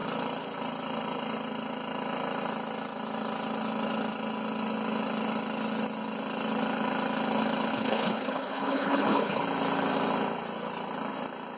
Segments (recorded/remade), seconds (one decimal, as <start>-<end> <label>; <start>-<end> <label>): 0.0-7.7 recorded; 7.7-9.4 remade; 9.4-11.6 recorded